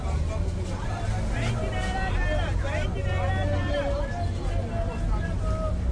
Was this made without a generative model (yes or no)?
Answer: yes